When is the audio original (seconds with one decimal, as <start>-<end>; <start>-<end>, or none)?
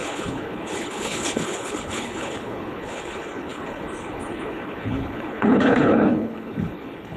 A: none